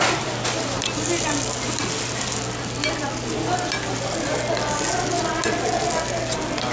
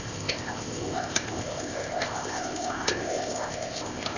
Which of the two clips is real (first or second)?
first